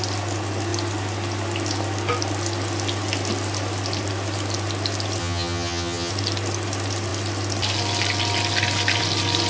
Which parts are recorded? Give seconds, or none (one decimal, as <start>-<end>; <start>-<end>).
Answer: 0.0-5.2; 6.1-9.5